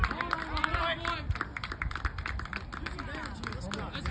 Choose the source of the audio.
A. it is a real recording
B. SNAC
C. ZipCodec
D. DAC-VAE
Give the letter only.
A